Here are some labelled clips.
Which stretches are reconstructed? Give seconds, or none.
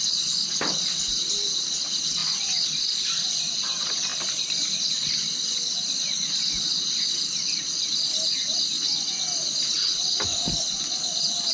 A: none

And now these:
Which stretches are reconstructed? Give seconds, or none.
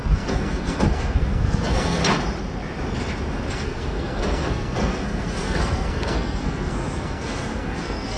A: 0.0-2.0 (codec, SNAC); 3.5-8.2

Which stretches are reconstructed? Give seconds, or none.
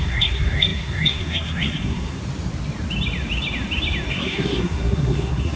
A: 0.0-2.2 (codec, SNAC); 4.1-5.6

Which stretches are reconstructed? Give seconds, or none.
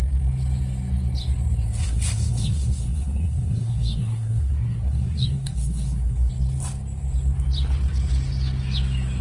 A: 1.8-6.3 (codec, SNAC)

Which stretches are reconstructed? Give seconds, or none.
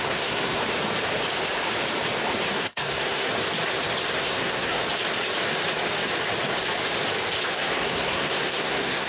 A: 0.0-0.6 (codec, SNAC); 2.5-3.3; 4.1-4.8; 7.5-9.1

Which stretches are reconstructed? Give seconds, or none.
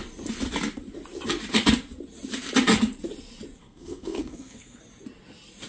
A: 3.6-4.8 (codec, SNAC)